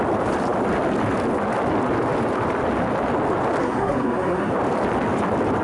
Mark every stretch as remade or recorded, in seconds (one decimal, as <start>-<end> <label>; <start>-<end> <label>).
0.0-3.6 recorded; 3.6-4.5 remade; 4.5-5.6 recorded